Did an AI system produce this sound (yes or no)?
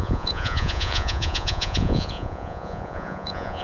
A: yes